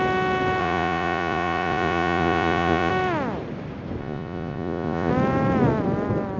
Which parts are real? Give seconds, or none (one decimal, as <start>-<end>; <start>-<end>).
0.0-0.6; 2.9-4.0; 5.1-6.4